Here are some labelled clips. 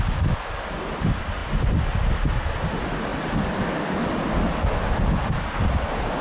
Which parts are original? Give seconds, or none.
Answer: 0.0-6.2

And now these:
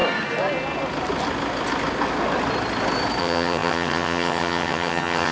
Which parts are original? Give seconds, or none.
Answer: 0.0-3.2

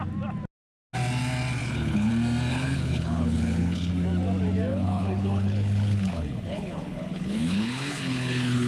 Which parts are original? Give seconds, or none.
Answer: 0.0-1.6; 2.1-2.5; 3.9-4.7

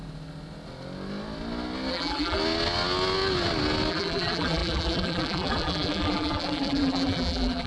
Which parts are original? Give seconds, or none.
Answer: 0.0-1.9; 2.4-3.9

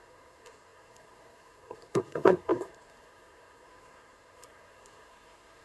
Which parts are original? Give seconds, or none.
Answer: none

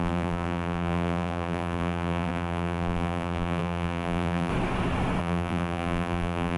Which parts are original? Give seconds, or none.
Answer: 4.5-5.2

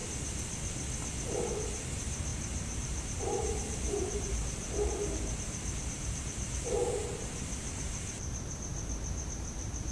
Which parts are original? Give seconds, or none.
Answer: 0.0-1.9; 8.7-9.3

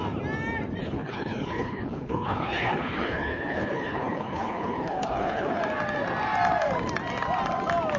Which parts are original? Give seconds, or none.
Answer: 0.0-0.8; 5.6-8.0